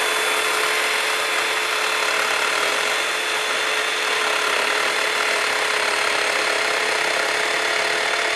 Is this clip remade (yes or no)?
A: no